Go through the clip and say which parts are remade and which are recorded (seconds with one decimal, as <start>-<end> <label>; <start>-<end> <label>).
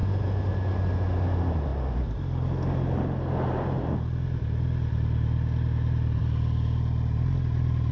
0.0-7.9 recorded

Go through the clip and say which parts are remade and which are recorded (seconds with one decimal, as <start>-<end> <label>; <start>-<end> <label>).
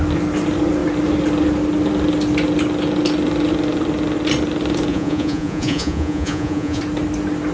0.0-4.9 recorded; 4.9-6.8 remade; 6.8-7.5 recorded